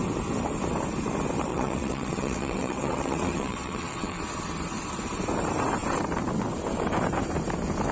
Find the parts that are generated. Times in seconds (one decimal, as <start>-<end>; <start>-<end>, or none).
1.5-4.2